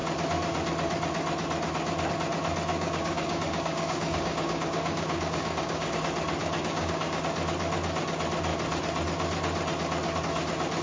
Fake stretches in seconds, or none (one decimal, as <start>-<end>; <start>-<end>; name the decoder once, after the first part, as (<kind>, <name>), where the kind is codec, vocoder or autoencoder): 2.7-6.0 (codec, DAC); 6.4-7.2